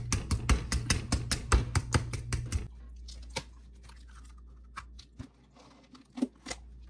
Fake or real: real